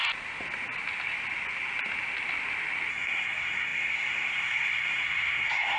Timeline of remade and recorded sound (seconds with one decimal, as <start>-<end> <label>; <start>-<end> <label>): 0.0-2.9 recorded; 2.9-5.8 remade